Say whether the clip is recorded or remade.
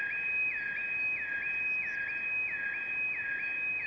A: recorded